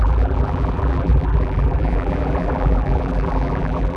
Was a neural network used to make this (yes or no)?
yes